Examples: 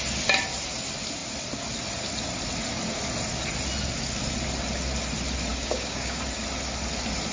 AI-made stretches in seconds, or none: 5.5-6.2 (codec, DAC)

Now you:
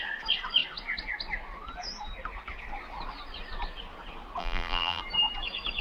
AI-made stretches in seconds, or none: 4.4-5.0 (vocoder, BigVGAN v2)

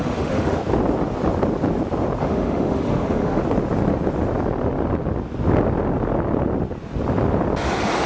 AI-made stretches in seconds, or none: 0.0-0.6 (autoencoder, DAC-VAE); 2.2-3.4

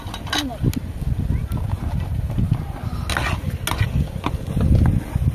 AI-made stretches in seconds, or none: none

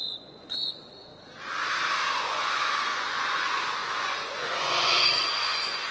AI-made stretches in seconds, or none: 0.0-1.1 (vocoder, Vocos); 2.1-5.9

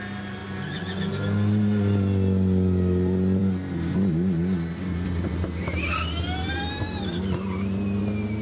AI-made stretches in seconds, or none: none